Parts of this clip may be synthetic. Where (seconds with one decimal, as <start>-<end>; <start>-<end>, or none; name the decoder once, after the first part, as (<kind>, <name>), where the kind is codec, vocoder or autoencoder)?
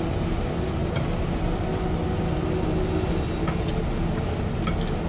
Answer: none